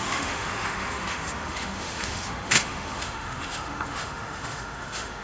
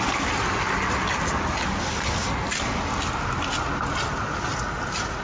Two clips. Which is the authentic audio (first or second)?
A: second